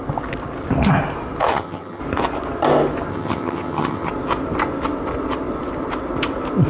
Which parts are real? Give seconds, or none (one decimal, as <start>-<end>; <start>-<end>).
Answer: 0.0-1.5; 2.0-3.1; 4.1-6.7